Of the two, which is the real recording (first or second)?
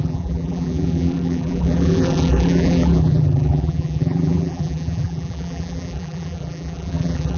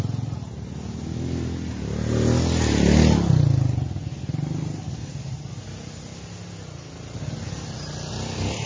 second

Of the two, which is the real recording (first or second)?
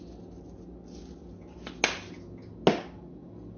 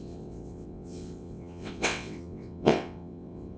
first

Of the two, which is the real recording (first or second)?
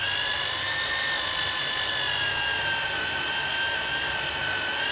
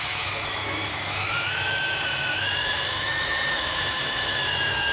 first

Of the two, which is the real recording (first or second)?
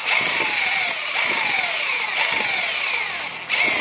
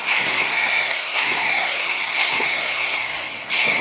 first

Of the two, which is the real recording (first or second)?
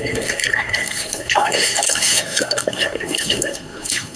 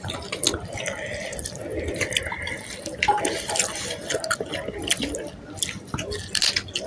second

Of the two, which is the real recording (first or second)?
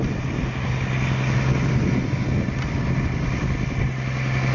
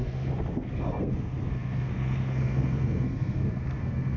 first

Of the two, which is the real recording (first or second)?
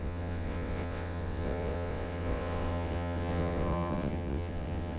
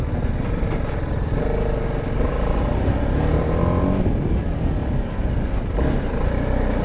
second